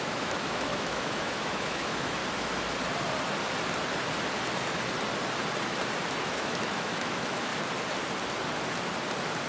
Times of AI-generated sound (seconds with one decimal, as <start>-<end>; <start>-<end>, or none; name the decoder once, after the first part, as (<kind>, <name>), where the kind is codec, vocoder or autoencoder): 0.0-2.2 (autoencoder, DAC-VAE); 6.2-7.5